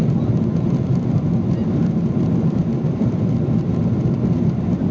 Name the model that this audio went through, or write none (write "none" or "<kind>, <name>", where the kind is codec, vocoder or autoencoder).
vocoder, BigVGAN v2